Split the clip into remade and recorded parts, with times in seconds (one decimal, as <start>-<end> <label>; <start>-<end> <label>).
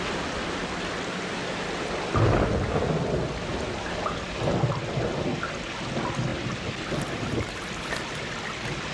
0.0-8.9 recorded